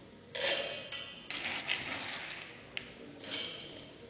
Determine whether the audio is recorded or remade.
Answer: recorded